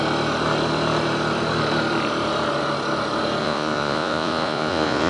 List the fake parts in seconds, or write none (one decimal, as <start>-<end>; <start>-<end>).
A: 3.4-5.1